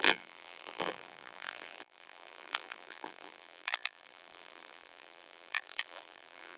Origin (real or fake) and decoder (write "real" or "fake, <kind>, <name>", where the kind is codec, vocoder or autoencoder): fake, vocoder, BigVGAN v2